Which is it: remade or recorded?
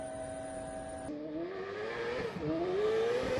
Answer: recorded